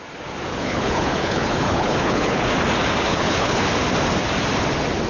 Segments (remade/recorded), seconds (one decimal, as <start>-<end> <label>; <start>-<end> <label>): 0.0-0.5 recorded; 0.5-2.5 remade; 2.5-3.1 recorded; 3.1-3.7 remade; 3.7-5.1 recorded